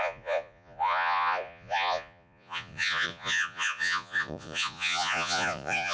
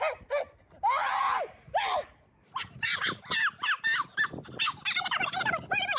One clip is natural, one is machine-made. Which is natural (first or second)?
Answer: second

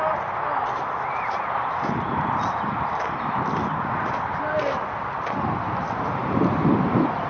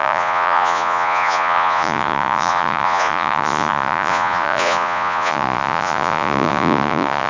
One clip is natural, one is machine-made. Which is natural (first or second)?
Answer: first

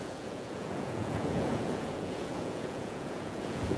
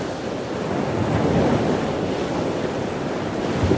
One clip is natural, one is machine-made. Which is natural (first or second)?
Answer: second